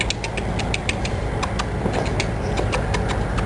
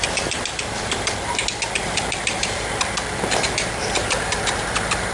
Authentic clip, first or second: first